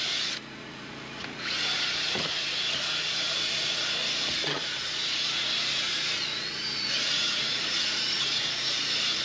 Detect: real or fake fake